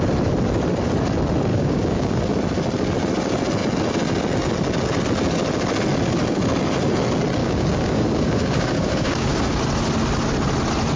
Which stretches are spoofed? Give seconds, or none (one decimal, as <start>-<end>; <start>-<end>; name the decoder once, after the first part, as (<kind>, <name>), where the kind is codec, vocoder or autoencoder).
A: 1.5-2.2 (codec, DAC); 7.4-9.6